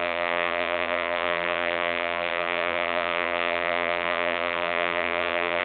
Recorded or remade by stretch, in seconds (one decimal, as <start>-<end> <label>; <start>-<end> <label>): 0.0-5.6 remade